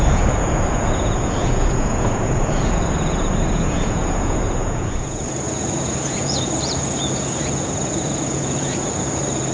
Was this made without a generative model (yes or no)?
no